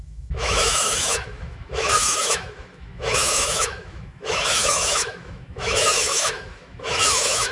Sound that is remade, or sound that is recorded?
remade